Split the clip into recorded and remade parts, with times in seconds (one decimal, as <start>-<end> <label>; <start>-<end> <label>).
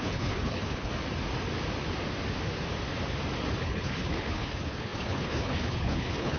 0.0-0.9 remade; 0.9-3.6 recorded; 3.6-6.4 remade